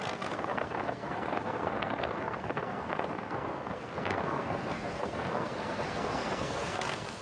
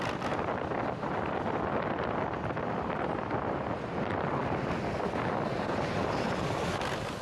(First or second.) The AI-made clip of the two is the first